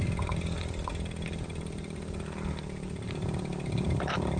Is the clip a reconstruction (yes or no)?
no